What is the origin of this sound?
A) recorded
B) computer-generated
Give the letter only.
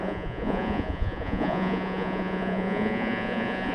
B